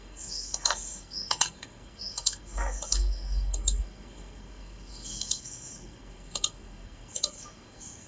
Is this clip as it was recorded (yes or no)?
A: no